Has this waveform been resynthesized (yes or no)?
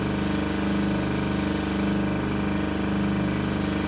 no